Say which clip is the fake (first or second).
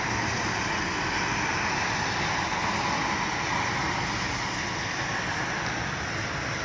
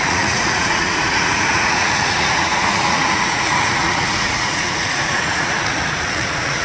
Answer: second